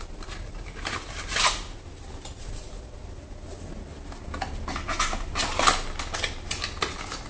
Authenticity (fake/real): real